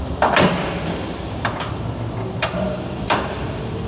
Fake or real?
fake